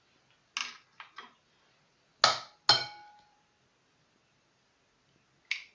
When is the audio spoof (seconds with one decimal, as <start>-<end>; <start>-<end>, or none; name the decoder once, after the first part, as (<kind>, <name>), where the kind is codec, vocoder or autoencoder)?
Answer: none